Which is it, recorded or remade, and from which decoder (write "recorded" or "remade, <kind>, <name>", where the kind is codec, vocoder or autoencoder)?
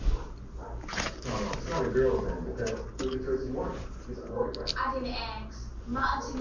recorded